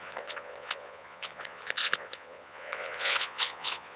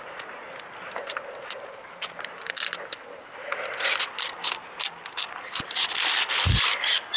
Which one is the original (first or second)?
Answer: second